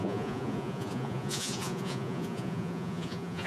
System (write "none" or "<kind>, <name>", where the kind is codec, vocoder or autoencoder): vocoder, Vocos